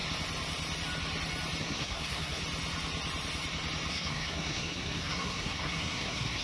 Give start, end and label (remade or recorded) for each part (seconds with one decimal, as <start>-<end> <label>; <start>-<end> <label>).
0.0-1.6 recorded; 1.6-2.4 remade; 2.4-3.9 recorded; 3.9-6.4 remade